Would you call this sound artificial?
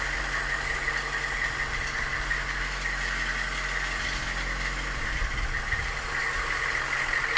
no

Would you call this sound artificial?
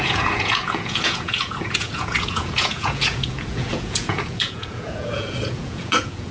yes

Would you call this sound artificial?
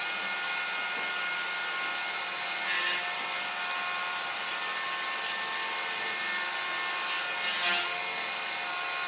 no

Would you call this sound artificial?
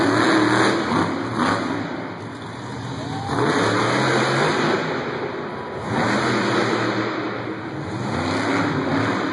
no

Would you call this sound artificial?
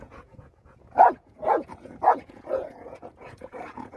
yes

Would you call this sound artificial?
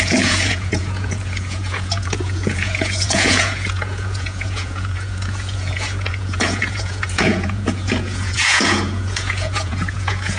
yes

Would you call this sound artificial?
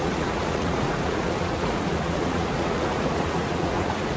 yes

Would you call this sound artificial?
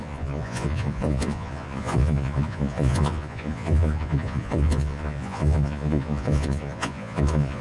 yes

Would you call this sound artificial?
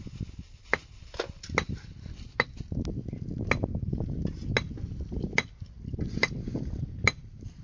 no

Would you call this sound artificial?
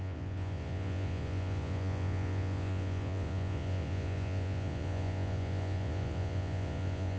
yes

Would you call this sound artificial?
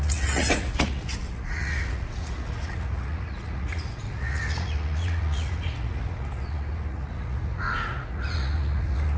yes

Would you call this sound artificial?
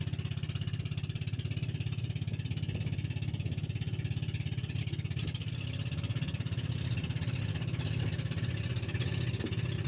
no